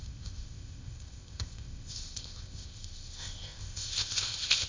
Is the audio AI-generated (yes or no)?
yes